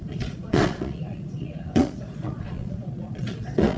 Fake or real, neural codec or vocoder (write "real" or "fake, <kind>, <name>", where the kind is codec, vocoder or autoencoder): fake, vocoder, Vocos